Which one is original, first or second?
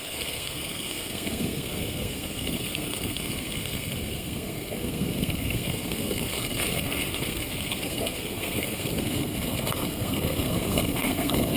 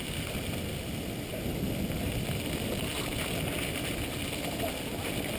second